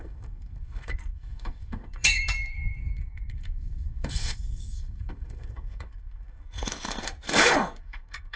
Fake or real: fake